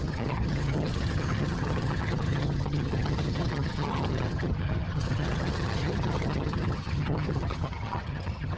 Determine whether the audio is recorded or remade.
remade